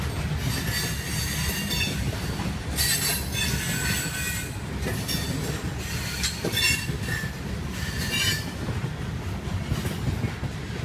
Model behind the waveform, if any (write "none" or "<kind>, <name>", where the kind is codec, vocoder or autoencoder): none